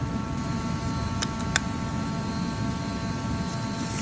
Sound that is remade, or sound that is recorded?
recorded